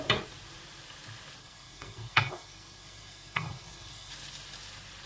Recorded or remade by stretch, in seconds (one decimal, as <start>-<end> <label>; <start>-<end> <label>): 0.0-1.4 recorded; 1.4-4.1 remade; 4.1-5.1 recorded